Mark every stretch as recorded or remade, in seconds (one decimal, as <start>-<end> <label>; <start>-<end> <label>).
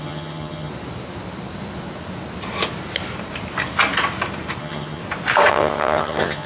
0.0-0.7 remade; 0.7-4.6 recorded; 4.6-5.0 remade; 5.0-5.5 recorded; 5.5-6.5 remade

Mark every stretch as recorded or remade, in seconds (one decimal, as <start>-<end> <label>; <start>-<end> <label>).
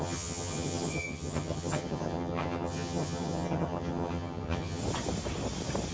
0.0-4.8 remade; 4.8-5.9 recorded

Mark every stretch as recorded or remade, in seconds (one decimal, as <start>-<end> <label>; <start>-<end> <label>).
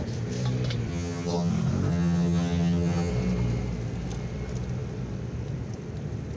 0.0-0.9 recorded; 0.9-1.5 remade; 1.5-1.9 recorded; 1.9-3.1 remade; 3.1-6.4 recorded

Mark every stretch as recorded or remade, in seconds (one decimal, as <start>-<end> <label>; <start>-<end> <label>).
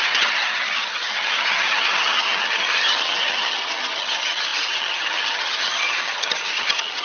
0.0-7.0 remade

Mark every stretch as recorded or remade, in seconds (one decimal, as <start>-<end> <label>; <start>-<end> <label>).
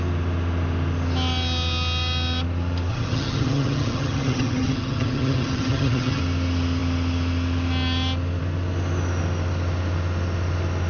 0.0-2.9 recorded; 2.9-6.2 remade; 6.2-10.9 recorded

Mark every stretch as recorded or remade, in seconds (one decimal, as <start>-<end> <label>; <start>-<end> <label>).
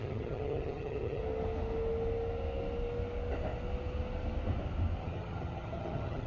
0.0-1.2 remade; 1.2-5.0 recorded; 5.0-6.3 remade